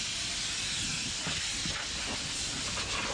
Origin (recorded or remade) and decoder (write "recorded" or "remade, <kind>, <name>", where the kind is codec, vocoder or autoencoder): recorded